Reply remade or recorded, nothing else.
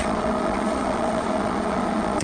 remade